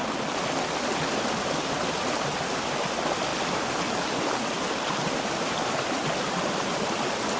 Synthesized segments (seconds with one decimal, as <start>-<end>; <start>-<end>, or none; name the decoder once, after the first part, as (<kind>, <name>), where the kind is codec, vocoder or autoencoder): none